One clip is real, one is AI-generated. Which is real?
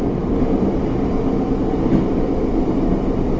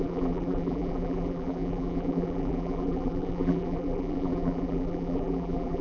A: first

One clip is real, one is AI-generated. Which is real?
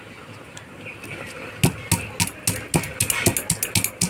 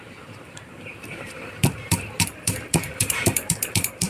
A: first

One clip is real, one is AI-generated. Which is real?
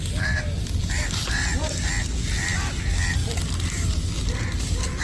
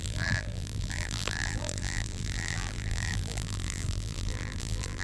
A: first